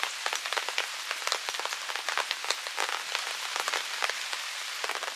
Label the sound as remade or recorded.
recorded